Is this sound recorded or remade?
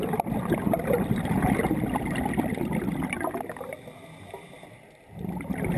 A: recorded